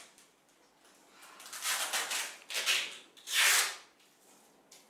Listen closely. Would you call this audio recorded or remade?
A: recorded